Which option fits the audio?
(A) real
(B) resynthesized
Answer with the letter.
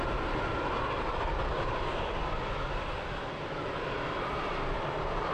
A